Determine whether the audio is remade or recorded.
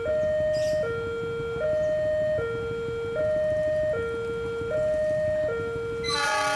recorded